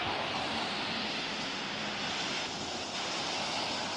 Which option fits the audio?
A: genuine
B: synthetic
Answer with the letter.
A